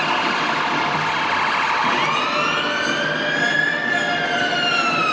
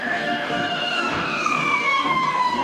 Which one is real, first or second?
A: first